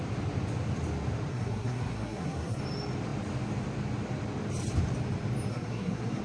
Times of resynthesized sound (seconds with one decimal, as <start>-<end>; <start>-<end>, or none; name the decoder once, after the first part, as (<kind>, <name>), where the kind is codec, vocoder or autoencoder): 1.3-2.6 (codec, SNAC); 5.5-6.2